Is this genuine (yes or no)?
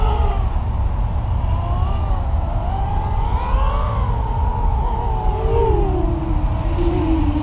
yes